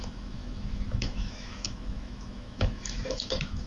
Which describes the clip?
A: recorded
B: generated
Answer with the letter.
B